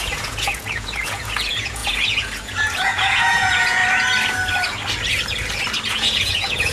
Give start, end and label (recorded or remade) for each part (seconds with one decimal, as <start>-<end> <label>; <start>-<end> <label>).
0.0-3.8 remade; 3.8-5.9 recorded; 5.9-6.7 remade